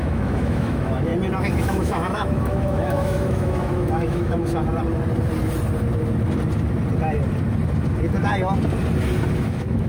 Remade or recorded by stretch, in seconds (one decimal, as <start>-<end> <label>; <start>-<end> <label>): 0.0-1.1 remade; 1.1-1.6 recorded; 1.6-4.6 remade; 4.6-9.3 recorded; 9.3-9.9 remade